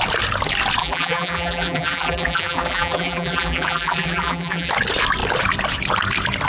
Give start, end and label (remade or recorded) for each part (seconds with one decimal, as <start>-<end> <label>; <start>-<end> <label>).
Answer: 0.0-0.8 recorded; 0.8-4.7 remade; 4.7-6.5 recorded